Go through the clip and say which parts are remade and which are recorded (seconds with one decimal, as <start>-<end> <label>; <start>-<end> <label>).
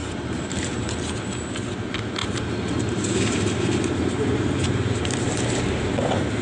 0.0-0.7 remade; 0.7-2.2 recorded; 2.2-5.8 remade; 5.8-6.4 recorded